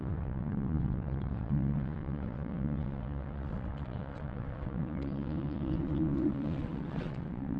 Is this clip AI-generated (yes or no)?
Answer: yes